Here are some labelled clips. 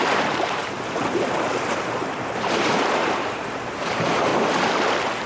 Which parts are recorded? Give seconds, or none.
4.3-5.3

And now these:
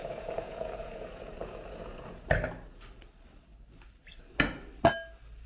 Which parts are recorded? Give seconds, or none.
2.3-5.5

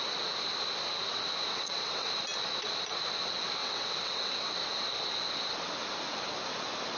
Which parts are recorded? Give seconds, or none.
0.0-1.5; 2.1-3.6; 4.5-7.0

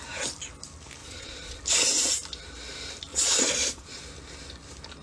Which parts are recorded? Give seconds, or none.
0.0-1.0; 1.6-3.1; 4.0-5.0

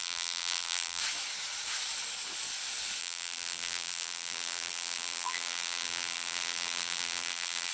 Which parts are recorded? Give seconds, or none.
1.0-3.0